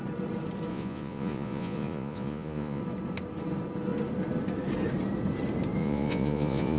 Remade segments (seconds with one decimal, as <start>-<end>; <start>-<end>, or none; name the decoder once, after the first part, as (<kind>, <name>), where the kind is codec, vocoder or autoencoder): 0.7-2.8 (vocoder, Vocos); 5.8-6.8